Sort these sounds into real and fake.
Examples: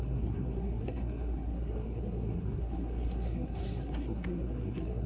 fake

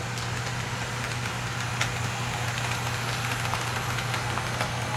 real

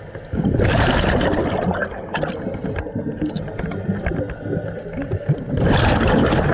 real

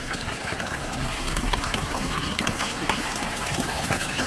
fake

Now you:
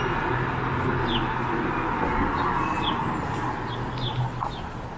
real